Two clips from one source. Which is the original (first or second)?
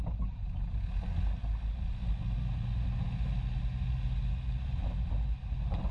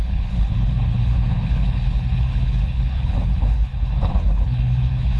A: first